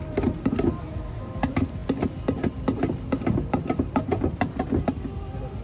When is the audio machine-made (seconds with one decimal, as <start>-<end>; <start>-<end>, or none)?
none